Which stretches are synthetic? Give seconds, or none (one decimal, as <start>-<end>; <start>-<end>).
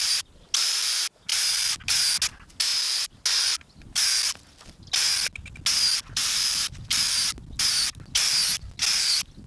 none